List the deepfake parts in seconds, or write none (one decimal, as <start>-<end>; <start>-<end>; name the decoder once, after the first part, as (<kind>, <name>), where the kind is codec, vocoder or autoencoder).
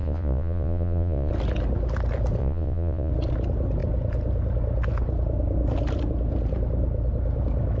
0.0-1.3 (vocoder, Vocos); 2.4-3.1